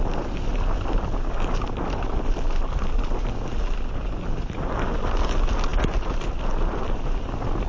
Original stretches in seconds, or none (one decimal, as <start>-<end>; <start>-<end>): 0.0-7.7